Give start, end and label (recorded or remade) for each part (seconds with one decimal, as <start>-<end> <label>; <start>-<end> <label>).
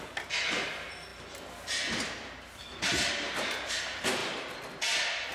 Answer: 0.0-5.3 recorded